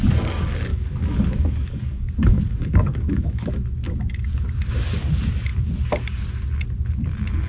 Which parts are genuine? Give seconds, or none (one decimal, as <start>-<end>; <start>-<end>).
0.0-0.7; 3.5-7.5